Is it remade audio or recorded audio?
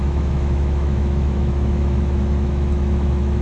remade